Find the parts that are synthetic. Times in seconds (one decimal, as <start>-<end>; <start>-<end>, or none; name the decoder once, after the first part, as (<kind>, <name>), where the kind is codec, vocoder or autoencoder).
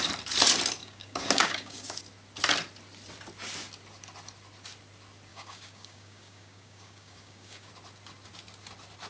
0.8-2.0 (codec, DAC); 5.3-7.7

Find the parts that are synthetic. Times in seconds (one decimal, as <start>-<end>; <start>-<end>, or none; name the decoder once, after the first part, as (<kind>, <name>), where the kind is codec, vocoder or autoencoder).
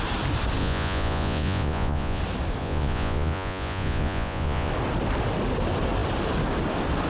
0.6-2.2 (vocoder, Vocos); 2.6-4.7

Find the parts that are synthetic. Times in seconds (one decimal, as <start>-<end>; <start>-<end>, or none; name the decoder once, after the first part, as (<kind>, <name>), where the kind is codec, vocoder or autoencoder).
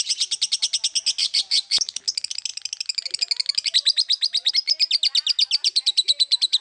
1.2-2.0 (vocoder, BigVGAN v2); 5.6-6.6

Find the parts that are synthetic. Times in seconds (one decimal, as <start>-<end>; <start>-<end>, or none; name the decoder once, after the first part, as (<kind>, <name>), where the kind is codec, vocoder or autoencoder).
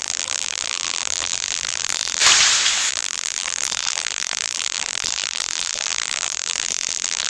0.0-2.2 (vocoder, BigVGAN v2); 2.9-7.3